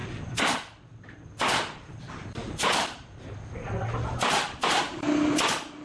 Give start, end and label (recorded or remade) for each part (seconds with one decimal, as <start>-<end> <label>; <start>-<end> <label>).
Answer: 0.0-5.8 recorded